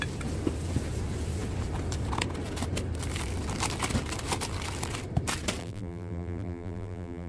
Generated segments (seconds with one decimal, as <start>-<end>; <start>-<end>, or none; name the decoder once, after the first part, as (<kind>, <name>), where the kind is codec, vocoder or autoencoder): 5.6-7.3 (vocoder, BigVGAN v2)